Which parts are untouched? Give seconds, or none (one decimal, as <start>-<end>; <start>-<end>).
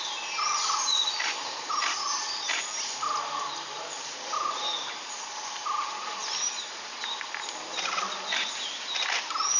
0.0-9.6